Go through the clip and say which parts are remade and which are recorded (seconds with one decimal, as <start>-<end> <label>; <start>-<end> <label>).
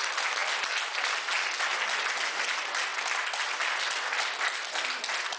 0.0-5.4 recorded